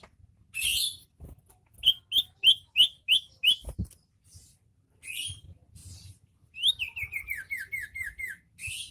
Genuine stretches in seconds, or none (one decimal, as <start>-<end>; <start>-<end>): 0.0-8.9